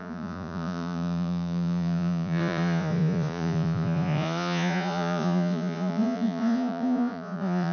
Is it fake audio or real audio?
fake